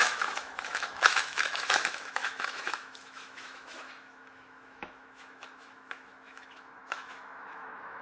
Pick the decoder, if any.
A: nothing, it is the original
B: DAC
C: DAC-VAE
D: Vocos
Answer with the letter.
C